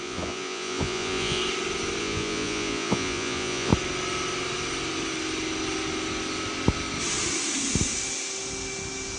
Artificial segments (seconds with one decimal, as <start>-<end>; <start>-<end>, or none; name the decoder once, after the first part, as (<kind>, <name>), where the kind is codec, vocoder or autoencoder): 0.0-1.4 (vocoder, Vocos); 2.0-3.7